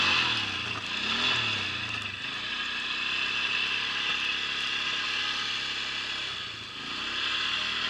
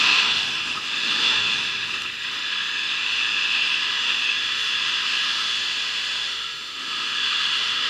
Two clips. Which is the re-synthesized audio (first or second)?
second